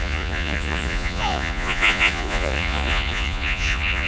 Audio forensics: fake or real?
fake